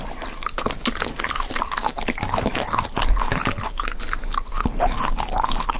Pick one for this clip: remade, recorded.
recorded